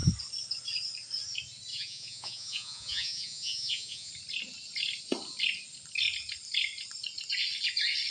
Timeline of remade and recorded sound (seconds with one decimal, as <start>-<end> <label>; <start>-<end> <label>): 0.0-1.7 recorded; 1.7-4.1 remade; 4.1-8.1 recorded

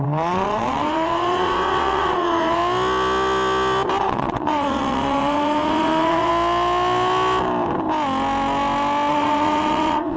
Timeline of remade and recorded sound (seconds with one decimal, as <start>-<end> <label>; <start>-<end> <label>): 0.0-2.6 remade; 2.6-4.0 recorded; 4.0-6.3 remade; 6.3-9.1 recorded; 9.1-10.2 remade